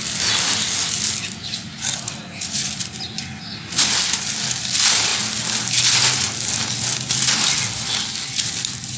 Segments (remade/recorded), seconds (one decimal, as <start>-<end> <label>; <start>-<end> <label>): 0.0-9.0 recorded